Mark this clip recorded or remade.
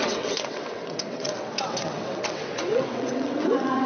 remade